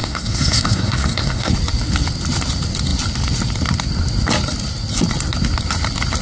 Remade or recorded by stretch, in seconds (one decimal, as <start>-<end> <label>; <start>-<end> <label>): 0.0-1.5 remade; 1.5-6.2 recorded